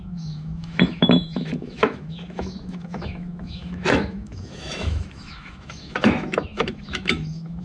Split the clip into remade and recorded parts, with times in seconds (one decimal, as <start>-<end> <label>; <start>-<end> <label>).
0.0-7.6 remade